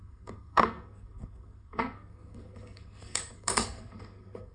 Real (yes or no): no